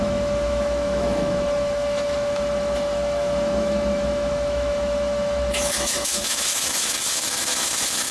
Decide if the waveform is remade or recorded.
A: remade